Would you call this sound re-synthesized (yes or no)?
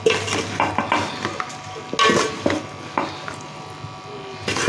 no